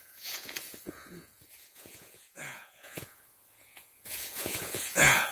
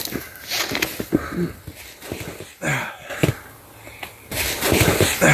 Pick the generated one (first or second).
first